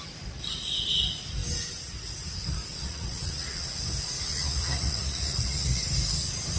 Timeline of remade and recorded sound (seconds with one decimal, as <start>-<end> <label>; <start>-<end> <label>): 0.0-2.7 recorded; 2.7-3.8 remade; 3.8-4.3 recorded; 4.3-5.8 remade; 5.8-6.6 recorded